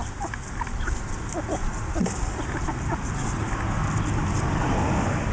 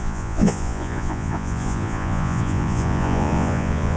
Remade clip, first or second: second